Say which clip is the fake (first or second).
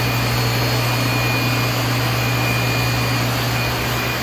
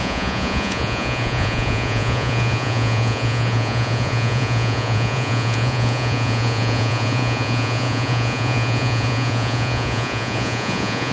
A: second